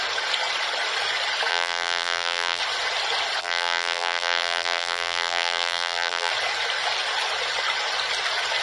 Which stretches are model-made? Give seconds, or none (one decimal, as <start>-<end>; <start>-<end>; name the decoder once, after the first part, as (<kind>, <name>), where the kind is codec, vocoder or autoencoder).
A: 1.5-2.6 (vocoder, BigVGAN v2); 3.4-6.3